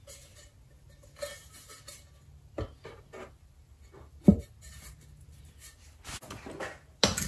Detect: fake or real real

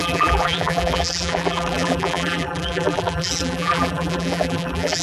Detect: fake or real fake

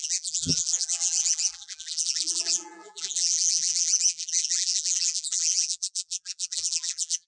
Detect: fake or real fake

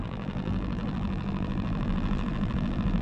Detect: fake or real fake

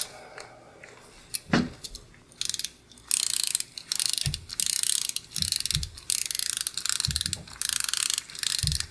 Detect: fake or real real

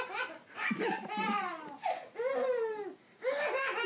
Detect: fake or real fake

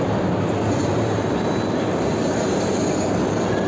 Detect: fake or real fake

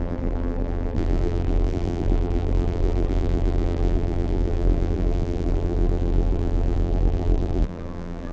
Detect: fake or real fake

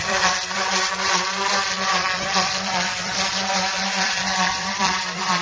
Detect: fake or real fake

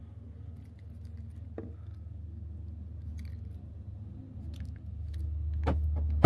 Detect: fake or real real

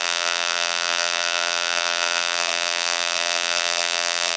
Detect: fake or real fake